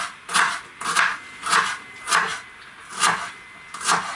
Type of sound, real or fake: real